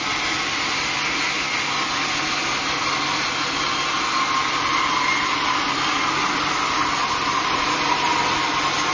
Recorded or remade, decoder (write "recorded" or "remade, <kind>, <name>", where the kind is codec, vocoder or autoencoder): recorded